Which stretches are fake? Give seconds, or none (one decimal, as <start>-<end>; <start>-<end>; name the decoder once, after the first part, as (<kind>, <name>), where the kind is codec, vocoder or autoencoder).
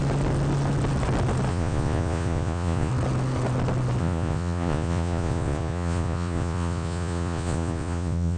1.5-2.9 (vocoder, Vocos); 4.0-8.4